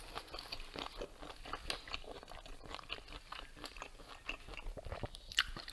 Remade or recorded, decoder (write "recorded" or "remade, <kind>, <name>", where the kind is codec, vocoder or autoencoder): recorded